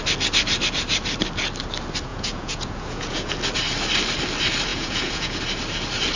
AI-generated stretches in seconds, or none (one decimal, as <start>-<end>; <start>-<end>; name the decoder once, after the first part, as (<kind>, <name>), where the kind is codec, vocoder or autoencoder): 2.1-3.3 (vocoder, Vocos); 4.7-5.4